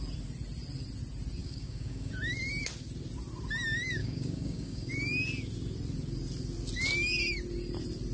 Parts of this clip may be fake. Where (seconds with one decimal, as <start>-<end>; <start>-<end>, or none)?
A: 1.4-2.1; 4.0-4.9